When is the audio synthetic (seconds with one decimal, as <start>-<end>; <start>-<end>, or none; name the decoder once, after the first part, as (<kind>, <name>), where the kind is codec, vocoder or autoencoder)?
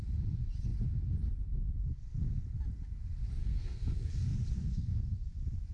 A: 3.4-4.1 (codec, SNAC); 4.6-5.1